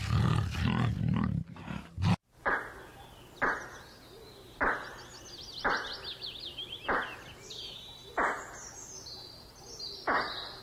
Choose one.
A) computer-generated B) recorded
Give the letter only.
B